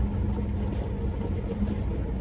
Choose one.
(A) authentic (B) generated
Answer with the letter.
A